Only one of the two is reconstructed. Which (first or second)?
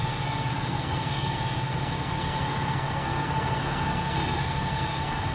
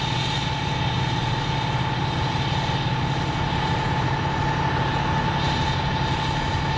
first